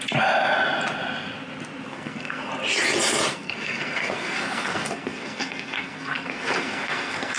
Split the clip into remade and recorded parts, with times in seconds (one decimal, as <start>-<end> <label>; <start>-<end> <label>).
0.0-1.9 recorded; 1.9-2.5 remade; 2.5-3.3 recorded; 3.3-7.4 remade